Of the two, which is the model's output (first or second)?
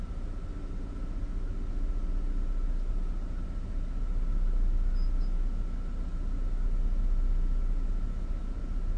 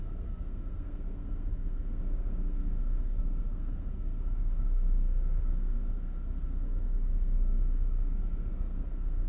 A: second